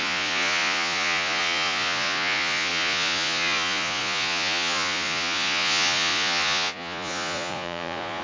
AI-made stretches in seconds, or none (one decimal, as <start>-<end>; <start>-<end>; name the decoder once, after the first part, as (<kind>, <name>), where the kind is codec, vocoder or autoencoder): 0.0-8.2 (vocoder, Vocos)